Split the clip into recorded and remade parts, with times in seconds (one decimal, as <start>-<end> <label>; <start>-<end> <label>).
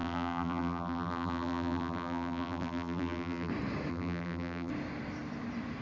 0.0-3.5 remade; 3.5-3.9 recorded; 3.9-4.7 remade; 4.7-5.8 recorded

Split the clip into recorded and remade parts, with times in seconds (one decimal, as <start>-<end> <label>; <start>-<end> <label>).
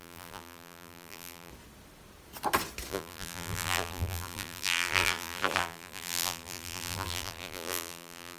0.0-1.5 remade; 1.5-2.9 recorded; 2.9-8.4 remade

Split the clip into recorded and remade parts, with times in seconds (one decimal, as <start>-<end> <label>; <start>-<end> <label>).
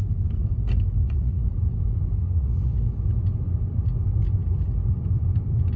0.0-1.0 recorded; 1.0-1.5 remade; 1.5-2.2 recorded; 2.2-2.8 remade; 2.8-5.8 recorded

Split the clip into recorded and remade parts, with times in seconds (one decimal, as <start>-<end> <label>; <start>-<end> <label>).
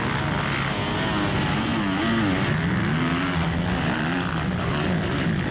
0.0-5.5 recorded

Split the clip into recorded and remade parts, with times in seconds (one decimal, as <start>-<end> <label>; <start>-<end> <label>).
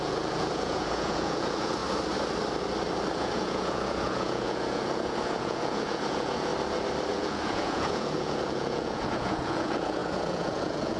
0.0-1.8 remade; 1.8-3.1 recorded; 3.1-6.5 remade; 6.5-7.1 recorded; 7.1-11.0 remade